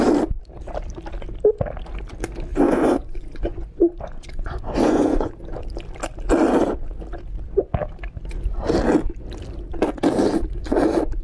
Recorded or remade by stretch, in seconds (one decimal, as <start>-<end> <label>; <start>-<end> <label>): 0.0-2.5 recorded; 2.5-5.3 remade; 5.3-11.2 recorded